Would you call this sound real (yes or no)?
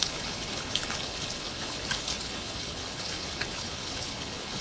no